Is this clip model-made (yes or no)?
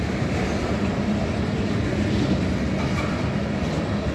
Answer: no